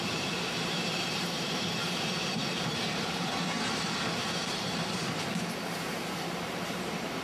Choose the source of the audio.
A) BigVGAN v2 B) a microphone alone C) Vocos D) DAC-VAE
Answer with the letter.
A